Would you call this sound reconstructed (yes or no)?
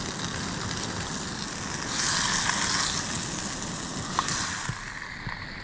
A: no